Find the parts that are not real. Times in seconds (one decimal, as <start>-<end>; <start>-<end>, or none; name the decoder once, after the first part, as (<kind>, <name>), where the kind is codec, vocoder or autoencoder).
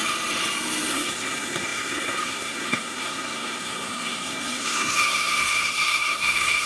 0.9-6.7 (codec, SNAC)